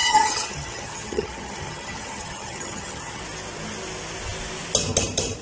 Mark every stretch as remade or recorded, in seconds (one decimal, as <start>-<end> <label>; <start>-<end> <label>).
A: 0.0-3.2 remade; 3.2-5.4 recorded